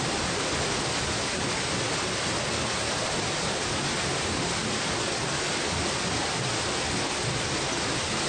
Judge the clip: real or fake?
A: real